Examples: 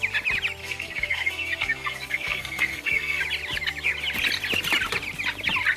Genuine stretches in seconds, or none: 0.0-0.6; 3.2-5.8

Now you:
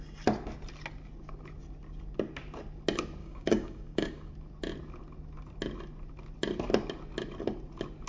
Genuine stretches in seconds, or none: 0.0-3.2; 4.3-8.1

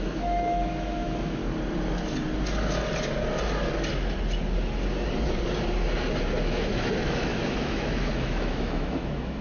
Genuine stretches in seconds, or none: 1.4-6.4

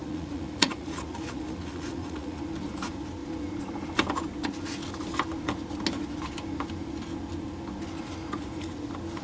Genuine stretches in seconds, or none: 2.4-9.2

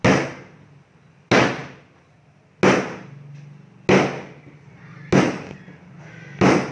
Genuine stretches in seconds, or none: 0.0-6.7